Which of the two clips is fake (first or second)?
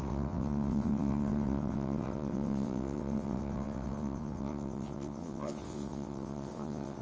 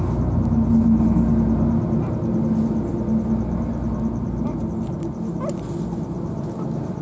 first